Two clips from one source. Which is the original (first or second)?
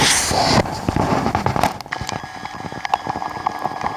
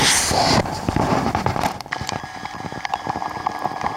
first